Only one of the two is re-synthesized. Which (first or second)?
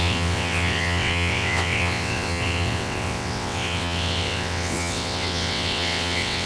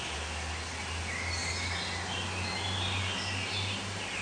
first